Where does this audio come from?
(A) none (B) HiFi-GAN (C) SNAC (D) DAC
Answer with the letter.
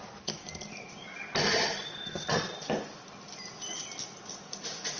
A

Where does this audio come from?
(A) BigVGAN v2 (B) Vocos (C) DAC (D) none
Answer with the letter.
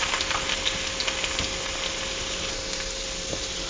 D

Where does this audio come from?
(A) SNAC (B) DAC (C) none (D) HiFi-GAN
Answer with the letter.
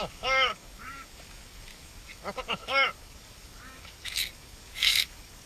B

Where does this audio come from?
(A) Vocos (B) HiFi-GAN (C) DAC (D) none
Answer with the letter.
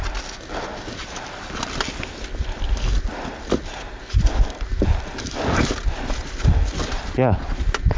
D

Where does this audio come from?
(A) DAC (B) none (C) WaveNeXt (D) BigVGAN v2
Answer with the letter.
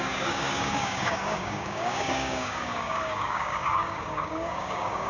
A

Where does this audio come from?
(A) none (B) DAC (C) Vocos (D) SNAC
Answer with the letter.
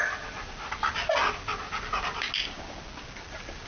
A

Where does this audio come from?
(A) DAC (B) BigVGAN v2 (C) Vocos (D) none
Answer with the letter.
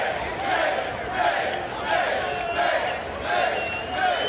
D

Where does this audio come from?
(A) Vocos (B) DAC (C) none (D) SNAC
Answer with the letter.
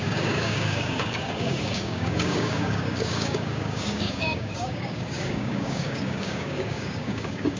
B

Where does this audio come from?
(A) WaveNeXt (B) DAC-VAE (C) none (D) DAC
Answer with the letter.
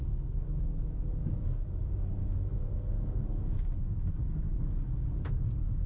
D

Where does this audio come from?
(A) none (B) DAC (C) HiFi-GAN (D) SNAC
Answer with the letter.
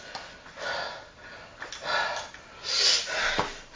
A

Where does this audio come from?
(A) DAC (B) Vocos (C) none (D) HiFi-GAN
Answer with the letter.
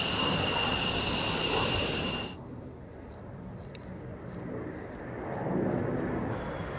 C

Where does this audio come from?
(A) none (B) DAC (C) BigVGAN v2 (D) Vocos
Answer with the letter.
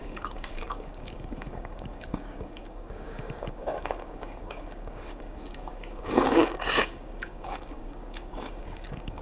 B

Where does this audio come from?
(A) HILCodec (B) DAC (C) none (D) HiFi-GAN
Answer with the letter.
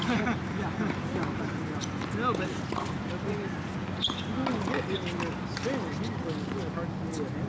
C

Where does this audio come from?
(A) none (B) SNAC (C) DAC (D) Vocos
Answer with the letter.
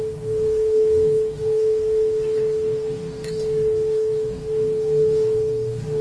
C